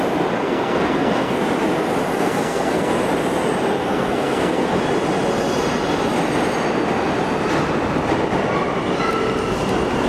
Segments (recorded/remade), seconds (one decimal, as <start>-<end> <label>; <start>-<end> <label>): 0.0-0.4 recorded; 0.4-1.4 remade; 1.4-2.1 recorded; 2.1-2.9 remade; 2.9-3.8 recorded; 3.8-4.8 remade; 4.8-10.1 recorded